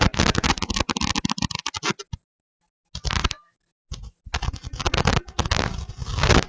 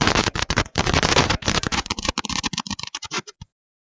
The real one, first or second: first